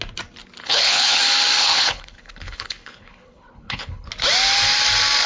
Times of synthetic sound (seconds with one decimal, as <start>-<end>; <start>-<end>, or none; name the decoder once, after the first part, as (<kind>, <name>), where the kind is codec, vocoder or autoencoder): 0.6-1.2 (codec, HILCodec); 1.6-4.1